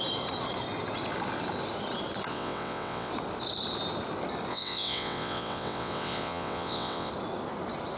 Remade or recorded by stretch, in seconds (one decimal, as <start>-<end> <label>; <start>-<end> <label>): 0.0-2.3 recorded; 2.3-3.1 remade; 3.1-4.5 recorded; 4.5-7.1 remade; 7.1-8.0 recorded